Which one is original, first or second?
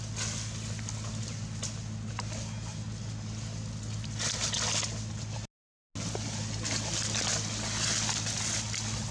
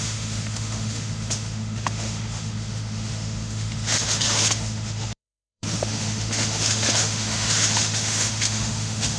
first